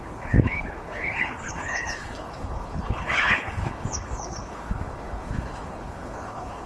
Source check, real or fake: fake